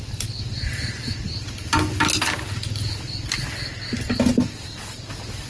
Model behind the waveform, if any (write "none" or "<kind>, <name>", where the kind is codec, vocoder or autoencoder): none